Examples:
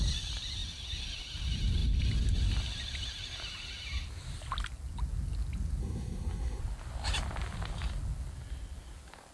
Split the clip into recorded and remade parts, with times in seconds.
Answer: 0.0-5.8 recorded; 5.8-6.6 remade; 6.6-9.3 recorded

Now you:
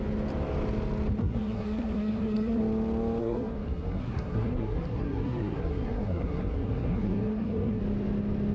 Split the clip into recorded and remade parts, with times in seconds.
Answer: 0.0-1.2 recorded; 1.2-2.6 remade; 2.6-3.2 recorded; 3.2-7.8 remade; 7.8-8.5 recorded

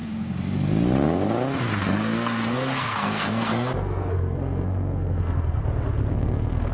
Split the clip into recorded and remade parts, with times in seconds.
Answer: 0.0-1.8 recorded; 1.8-5.6 remade; 5.6-6.1 recorded; 6.1-6.7 remade

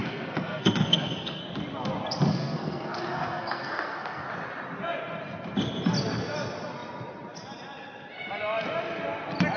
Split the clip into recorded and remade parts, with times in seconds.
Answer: 0.0-1.4 remade; 1.4-2.3 recorded; 2.3-4.3 remade; 4.3-9.6 recorded

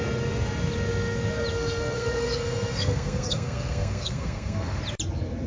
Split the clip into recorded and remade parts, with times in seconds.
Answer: 0.0-1.5 recorded; 1.5-4.8 remade; 4.8-5.5 recorded

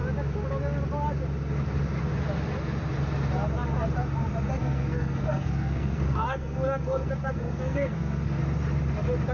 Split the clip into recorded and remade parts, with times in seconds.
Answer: 0.0-4.6 recorded; 4.6-8.4 remade; 8.4-9.3 recorded